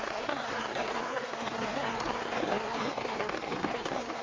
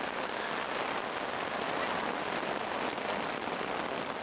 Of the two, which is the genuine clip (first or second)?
second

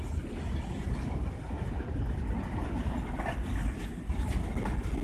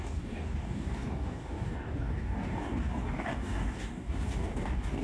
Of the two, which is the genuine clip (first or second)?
first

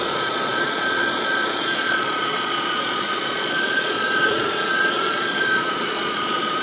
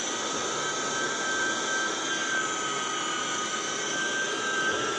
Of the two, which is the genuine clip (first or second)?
second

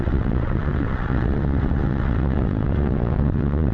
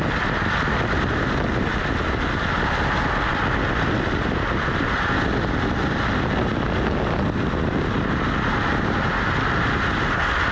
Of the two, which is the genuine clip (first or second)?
second